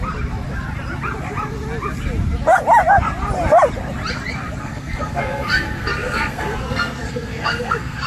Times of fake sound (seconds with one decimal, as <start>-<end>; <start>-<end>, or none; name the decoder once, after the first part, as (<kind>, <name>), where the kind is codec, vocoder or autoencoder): 4.6-8.1 (codec, SNAC)